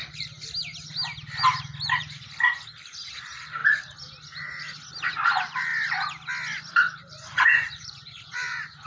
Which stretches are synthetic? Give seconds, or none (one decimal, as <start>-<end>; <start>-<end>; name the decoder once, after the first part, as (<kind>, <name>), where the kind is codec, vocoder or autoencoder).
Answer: 2.0-3.6 (vocoder, BigVGAN v2); 5.1-5.7; 6.7-8.9